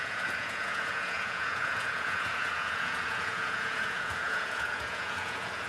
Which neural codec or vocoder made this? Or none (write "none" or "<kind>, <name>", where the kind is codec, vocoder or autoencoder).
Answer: vocoder, Vocos